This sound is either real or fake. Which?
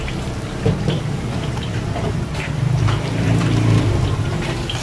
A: fake